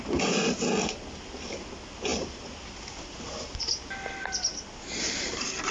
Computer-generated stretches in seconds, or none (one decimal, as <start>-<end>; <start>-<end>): none